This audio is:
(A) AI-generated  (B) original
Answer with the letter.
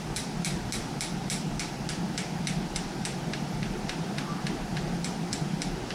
A